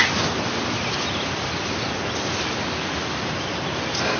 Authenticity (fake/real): real